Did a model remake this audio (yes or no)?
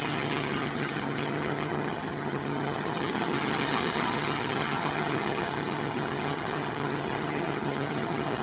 yes